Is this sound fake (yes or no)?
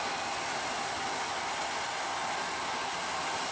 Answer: no